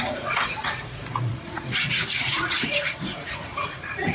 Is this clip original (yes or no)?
no